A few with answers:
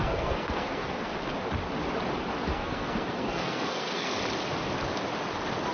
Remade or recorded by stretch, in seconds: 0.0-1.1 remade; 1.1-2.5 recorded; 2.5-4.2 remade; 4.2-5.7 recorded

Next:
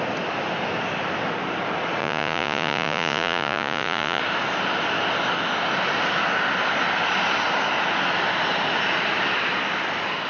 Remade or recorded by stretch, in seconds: 0.0-2.0 recorded; 2.0-4.2 remade; 4.2-10.3 recorded